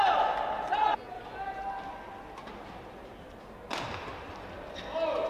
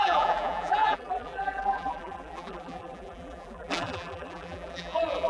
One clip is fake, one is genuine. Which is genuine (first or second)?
first